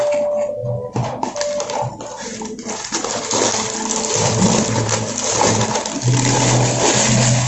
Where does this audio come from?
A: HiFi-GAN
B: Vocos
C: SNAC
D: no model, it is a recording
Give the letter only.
D